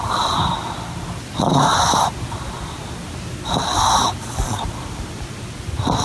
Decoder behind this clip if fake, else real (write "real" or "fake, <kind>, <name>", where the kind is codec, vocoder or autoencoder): real